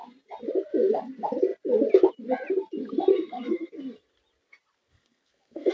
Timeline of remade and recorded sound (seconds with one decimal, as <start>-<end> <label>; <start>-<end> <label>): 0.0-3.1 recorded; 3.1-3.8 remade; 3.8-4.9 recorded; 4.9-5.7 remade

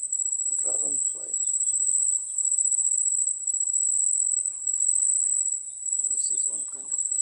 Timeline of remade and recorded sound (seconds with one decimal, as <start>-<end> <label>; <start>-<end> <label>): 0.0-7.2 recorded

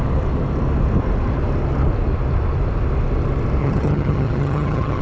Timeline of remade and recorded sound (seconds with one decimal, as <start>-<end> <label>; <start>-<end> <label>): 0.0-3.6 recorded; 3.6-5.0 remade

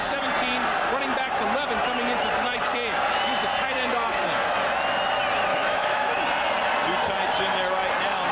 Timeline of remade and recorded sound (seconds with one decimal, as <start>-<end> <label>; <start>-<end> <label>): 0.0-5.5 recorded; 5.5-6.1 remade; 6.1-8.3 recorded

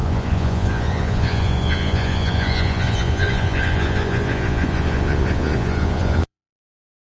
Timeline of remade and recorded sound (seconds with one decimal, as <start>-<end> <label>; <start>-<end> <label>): 0.0-7.0 remade

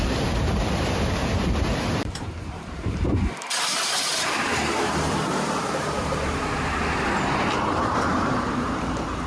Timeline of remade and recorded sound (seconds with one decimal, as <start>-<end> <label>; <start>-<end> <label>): 0.0-9.3 remade

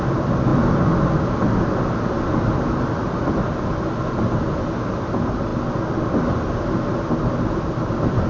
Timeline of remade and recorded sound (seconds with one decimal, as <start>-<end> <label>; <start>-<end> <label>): 0.0-8.3 recorded

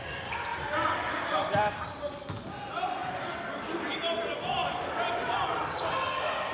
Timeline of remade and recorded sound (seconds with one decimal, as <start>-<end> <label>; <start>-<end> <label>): 0.0-0.5 recorded; 0.5-2.3 remade; 2.3-3.0 recorded; 3.0-3.9 remade; 3.9-6.5 recorded